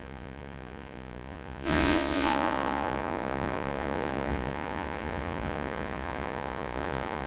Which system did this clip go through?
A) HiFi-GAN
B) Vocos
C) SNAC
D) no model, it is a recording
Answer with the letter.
B